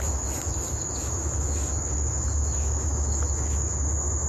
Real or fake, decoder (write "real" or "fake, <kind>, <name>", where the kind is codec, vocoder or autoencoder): fake, autoencoder, DAC-VAE